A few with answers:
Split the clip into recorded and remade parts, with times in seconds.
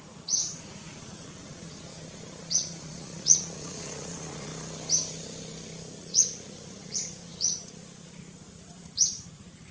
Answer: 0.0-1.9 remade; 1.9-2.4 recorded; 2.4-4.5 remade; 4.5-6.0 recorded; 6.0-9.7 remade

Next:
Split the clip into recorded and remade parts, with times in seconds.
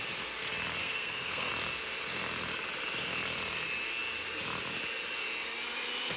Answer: 0.0-0.8 recorded; 0.8-1.5 remade; 1.5-6.2 recorded